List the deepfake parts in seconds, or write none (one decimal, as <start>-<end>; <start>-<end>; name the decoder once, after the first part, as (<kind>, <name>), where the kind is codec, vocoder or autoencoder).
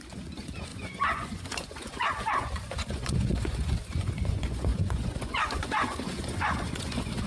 0.0-7.3 (vocoder, Vocos)